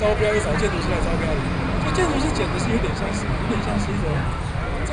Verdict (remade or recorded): recorded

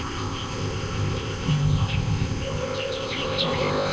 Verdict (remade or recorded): remade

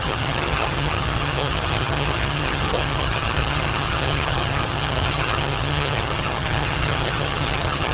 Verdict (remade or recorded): remade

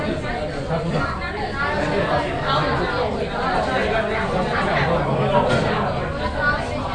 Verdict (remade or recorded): recorded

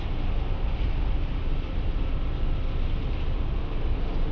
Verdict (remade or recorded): recorded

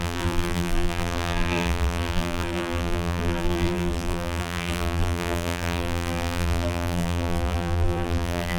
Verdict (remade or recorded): remade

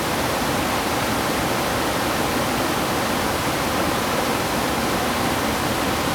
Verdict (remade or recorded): recorded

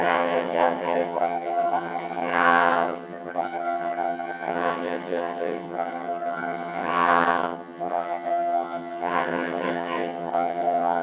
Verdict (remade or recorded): remade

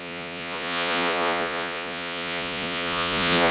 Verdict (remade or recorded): remade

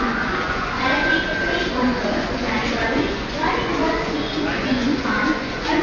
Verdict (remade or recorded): remade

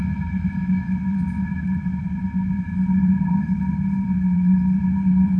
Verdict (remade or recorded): remade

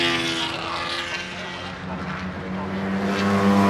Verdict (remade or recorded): recorded